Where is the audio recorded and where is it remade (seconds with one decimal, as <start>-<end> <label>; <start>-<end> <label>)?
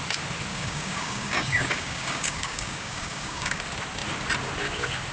0.0-0.5 recorded; 0.5-3.6 remade; 3.6-5.1 recorded